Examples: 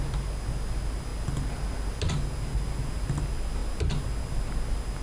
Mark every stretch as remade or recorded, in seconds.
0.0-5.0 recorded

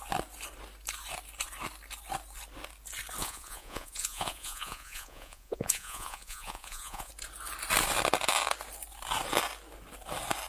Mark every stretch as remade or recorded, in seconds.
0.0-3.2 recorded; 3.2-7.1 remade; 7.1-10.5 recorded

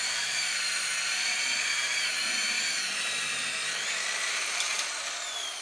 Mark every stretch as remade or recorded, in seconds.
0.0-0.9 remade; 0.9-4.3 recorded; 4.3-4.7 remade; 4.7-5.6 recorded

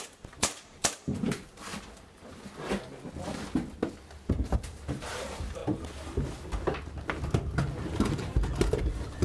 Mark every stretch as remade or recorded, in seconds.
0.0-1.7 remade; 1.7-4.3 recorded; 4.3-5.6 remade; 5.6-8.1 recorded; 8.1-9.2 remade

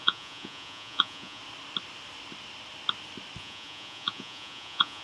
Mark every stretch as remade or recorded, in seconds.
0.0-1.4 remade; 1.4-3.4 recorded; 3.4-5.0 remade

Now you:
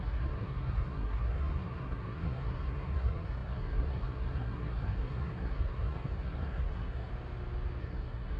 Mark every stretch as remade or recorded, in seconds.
0.0-7.1 remade; 7.1-7.8 recorded; 7.8-8.4 remade

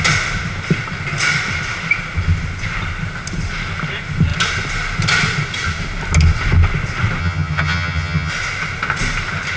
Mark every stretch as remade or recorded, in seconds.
0.0-7.2 recorded; 7.2-8.3 remade; 8.3-9.6 recorded

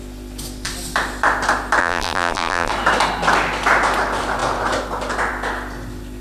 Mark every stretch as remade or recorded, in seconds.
0.0-1.8 recorded; 1.8-2.7 remade; 2.7-6.2 recorded